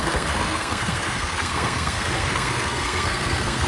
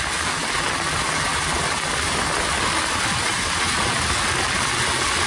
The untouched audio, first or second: second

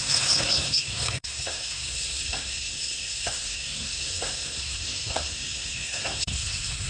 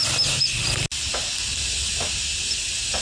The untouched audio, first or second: second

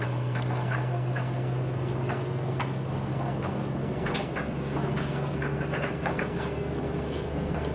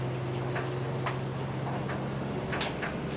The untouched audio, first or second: second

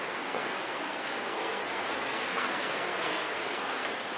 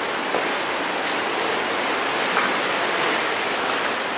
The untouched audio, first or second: second